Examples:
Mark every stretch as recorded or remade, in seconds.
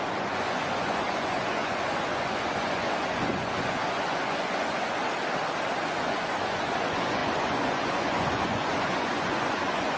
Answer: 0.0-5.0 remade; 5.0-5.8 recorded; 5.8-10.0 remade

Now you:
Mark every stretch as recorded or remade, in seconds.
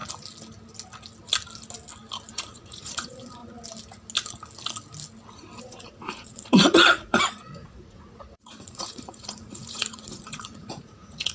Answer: 0.0-2.3 recorded; 2.3-3.4 remade; 3.4-5.6 recorded; 5.6-11.3 remade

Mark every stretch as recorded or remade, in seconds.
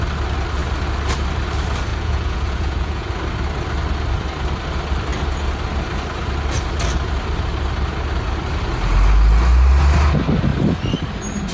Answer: 0.0-1.9 recorded; 1.9-3.1 remade; 3.1-11.5 recorded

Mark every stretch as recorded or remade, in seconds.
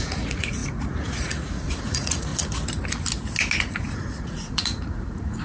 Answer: 0.0-2.3 remade; 2.3-3.6 recorded; 3.6-5.4 remade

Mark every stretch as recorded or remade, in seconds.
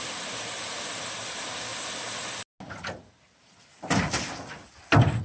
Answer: 0.0-5.2 recorded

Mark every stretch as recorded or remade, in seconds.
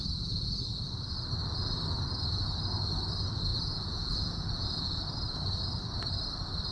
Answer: 0.0-0.5 remade; 0.5-3.5 recorded; 3.5-5.0 remade; 5.0-6.7 recorded